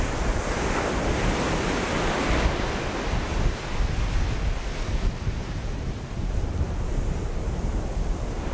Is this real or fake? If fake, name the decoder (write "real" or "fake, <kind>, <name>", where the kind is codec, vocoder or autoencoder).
real